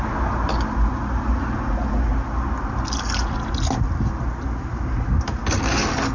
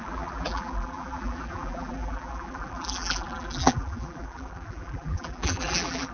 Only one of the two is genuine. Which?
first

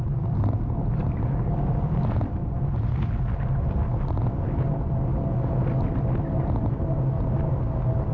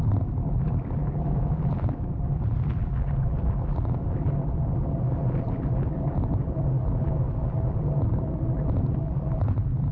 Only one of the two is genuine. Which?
first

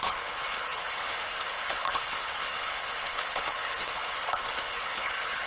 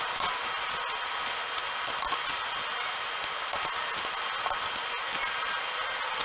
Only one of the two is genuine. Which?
second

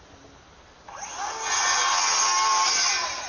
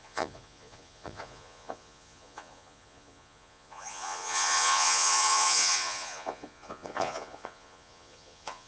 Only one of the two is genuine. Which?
first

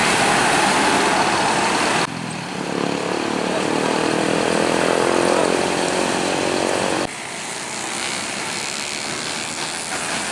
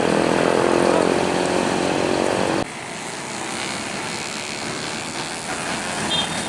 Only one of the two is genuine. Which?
second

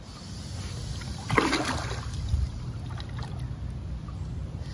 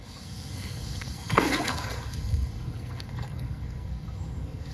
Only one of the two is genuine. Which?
first